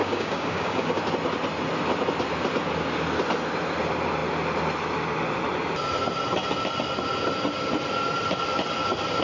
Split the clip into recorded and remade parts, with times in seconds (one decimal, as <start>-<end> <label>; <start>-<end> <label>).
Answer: 0.0-1.0 remade; 1.0-9.2 recorded